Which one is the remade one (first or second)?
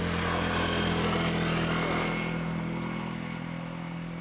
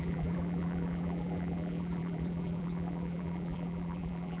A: second